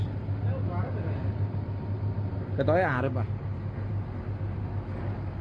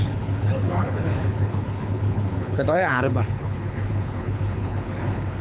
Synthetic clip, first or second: second